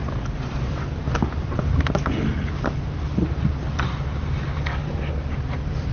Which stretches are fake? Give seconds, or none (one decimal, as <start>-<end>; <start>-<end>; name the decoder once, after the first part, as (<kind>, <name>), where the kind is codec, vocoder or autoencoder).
4.5-5.1 (codec, DAC)